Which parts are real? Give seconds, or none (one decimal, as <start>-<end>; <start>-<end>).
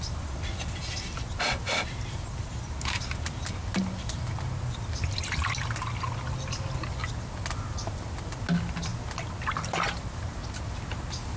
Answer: 0.0-11.4